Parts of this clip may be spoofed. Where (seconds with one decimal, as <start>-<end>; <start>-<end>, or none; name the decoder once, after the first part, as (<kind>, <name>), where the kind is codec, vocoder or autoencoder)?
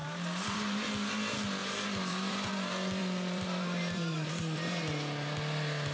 0.0-0.9 (vocoder, BigVGAN v2); 1.6-2.5; 3.0-4.3